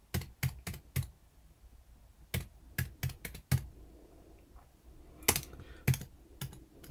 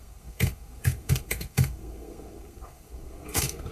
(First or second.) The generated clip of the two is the second